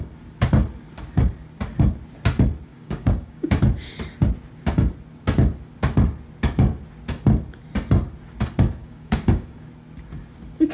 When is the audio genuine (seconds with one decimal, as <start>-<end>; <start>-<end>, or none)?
0.0-2.7; 3.6-8.8; 9.7-10.7